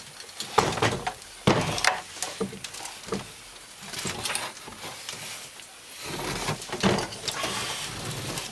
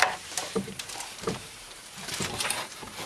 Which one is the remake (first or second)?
second